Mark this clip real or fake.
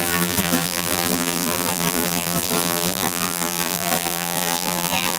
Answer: fake